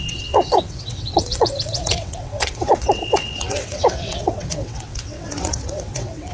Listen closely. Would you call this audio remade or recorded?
remade